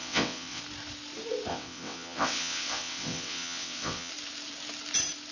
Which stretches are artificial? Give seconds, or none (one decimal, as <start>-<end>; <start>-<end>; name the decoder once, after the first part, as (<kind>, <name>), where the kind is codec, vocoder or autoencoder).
0.0-0.6 (vocoder, WaveNeXt); 1.5-4.1